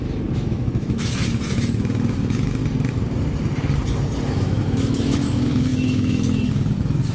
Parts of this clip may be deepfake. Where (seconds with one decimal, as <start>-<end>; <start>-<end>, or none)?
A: 0.0-2.6; 4.3-7.1